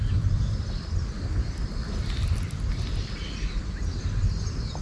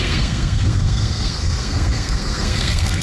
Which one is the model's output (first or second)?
second